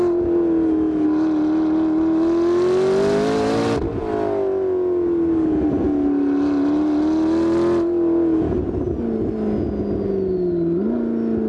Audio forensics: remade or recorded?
recorded